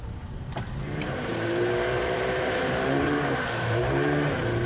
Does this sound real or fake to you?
fake